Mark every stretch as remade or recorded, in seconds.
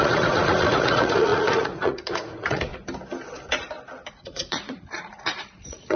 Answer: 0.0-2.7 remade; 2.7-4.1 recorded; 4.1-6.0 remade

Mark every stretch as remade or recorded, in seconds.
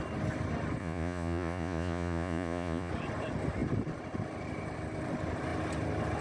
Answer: 0.0-0.8 recorded; 0.8-2.9 remade; 2.9-6.2 recorded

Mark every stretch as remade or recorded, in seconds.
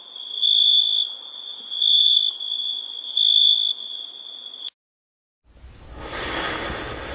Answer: 0.0-7.1 recorded